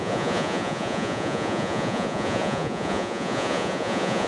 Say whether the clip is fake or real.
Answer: fake